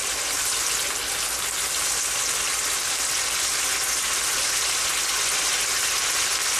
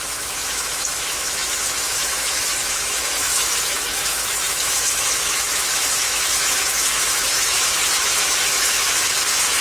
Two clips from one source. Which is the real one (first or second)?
first